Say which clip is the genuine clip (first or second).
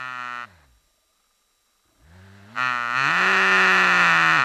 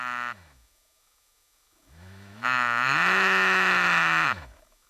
first